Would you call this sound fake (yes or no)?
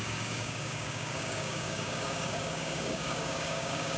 yes